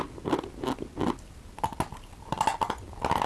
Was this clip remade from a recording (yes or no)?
no